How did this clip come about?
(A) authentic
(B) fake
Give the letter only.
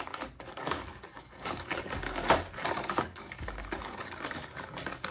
B